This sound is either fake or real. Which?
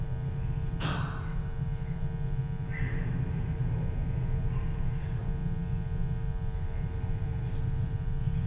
real